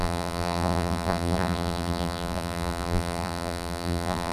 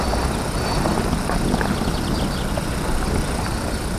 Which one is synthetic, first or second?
first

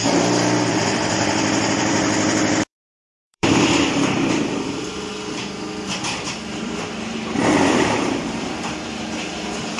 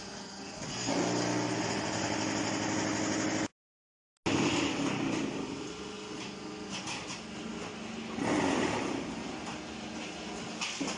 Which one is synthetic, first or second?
first